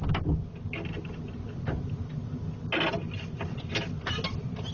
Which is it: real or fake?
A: real